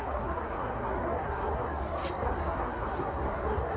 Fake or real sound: fake